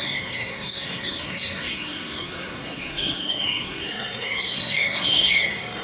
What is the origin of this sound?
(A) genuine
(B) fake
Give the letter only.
B